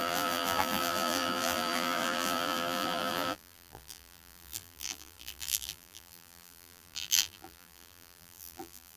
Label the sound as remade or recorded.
remade